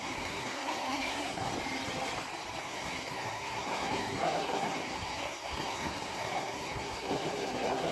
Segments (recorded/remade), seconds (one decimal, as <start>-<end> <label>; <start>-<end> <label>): 0.0-1.5 remade; 1.5-2.6 recorded; 2.6-7.9 remade